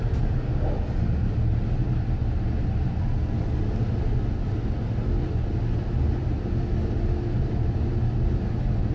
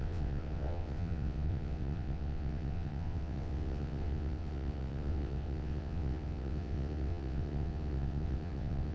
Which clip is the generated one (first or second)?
second